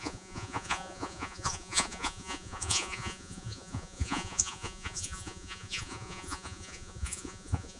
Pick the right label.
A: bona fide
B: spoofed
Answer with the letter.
B